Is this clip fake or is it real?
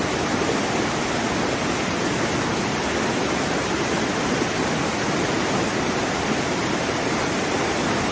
real